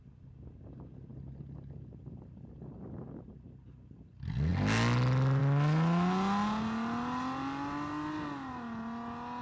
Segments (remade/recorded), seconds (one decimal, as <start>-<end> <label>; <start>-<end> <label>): 0.0-9.4 recorded